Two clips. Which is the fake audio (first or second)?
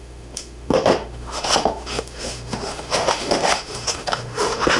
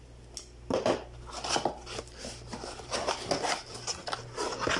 first